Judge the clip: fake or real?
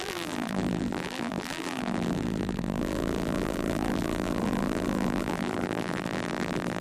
fake